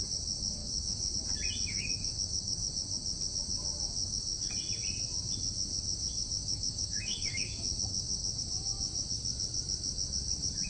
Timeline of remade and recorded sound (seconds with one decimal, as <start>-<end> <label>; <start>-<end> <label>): 0.0-0.6 recorded; 0.6-1.1 remade; 1.1-1.7 recorded; 1.7-2.7 remade; 2.7-4.0 recorded; 4.0-4.5 remade; 4.5-6.4 recorded; 6.4-8.4 remade; 8.4-10.7 recorded